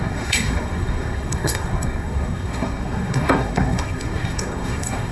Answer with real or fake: fake